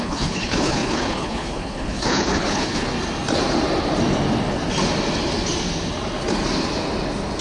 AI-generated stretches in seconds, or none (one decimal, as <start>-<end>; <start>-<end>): 0.0-2.9